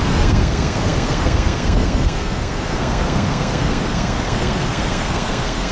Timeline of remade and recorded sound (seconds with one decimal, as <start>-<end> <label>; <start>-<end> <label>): 0.0-5.7 remade